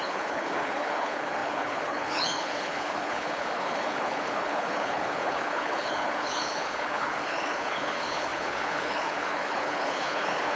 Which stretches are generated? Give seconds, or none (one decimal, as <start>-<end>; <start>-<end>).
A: 0.0-10.6